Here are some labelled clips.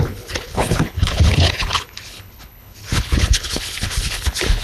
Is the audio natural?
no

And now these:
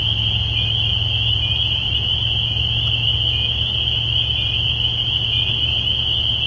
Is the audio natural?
yes